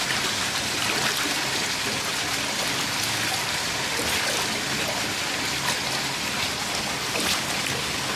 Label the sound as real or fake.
real